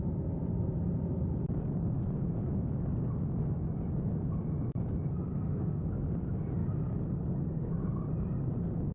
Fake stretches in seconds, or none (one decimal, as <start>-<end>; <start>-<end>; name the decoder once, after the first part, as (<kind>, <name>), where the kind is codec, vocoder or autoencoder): 5.3-5.8 (codec, SNAC)